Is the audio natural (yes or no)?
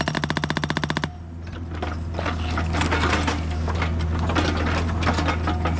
yes